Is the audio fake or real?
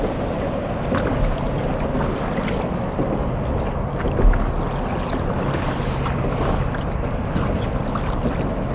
real